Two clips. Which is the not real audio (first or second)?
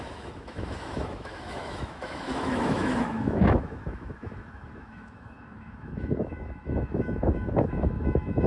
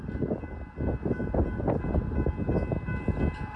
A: first